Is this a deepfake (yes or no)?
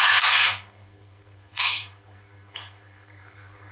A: yes